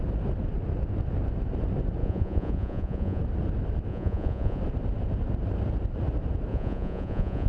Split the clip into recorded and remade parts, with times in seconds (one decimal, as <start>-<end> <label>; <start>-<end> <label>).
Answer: 0.0-2.0 recorded; 2.0-3.2 remade; 3.2-3.9 recorded; 3.9-4.6 remade; 4.6-6.5 recorded; 6.5-7.5 remade